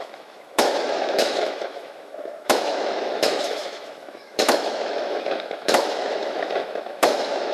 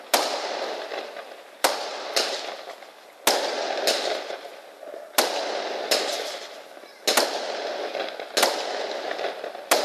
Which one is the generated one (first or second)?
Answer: first